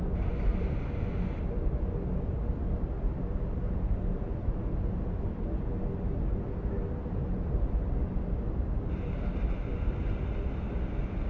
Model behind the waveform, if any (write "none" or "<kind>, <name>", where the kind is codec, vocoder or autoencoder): none